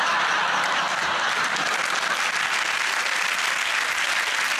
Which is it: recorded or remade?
recorded